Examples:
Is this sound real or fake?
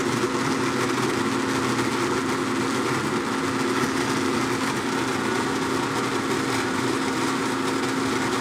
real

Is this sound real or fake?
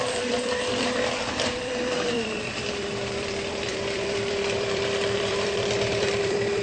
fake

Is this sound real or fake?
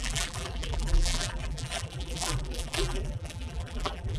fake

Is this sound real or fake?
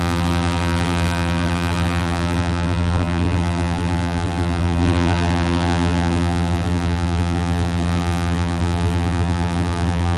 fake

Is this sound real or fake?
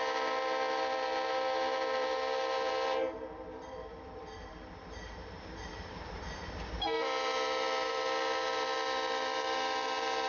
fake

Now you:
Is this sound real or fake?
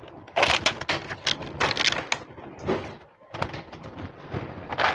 real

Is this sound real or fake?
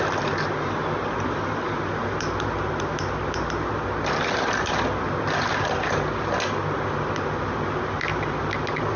real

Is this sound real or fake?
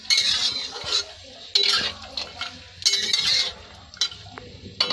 real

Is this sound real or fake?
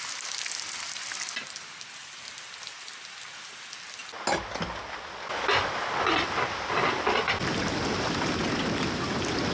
real